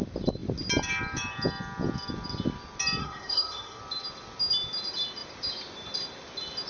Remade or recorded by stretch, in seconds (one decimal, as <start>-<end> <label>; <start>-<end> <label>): 0.0-3.0 recorded; 3.0-3.8 remade; 3.8-6.7 recorded